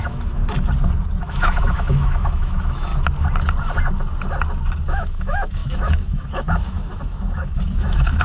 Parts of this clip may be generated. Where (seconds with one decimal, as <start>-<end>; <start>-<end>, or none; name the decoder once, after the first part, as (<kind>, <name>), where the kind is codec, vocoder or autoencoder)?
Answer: 0.0-0.4 (autoencoder, DAC-VAE); 1.2-2.9; 4.9-8.2